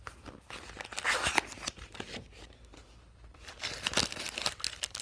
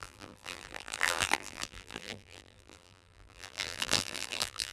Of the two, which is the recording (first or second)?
first